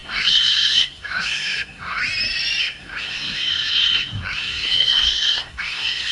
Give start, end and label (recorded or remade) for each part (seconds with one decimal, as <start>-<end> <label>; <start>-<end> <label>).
0.0-2.0 remade; 2.0-2.6 recorded; 2.6-6.1 remade